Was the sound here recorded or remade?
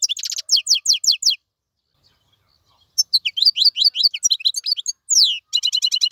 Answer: recorded